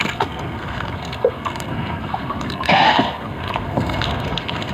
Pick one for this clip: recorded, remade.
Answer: remade